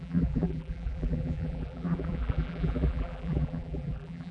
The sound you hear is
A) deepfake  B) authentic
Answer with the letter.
A